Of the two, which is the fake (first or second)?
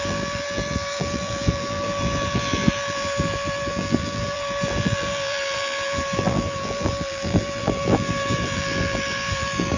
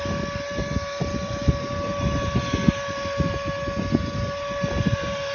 first